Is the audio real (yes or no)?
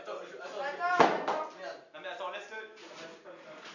yes